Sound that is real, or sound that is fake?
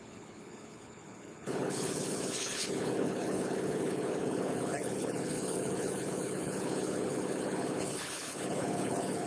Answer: fake